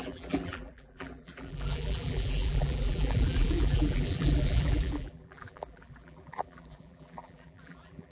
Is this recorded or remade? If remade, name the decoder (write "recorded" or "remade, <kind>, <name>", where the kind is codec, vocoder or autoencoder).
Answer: remade, vocoder, BigVGAN v2